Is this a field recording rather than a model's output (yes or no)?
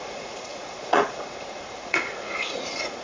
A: no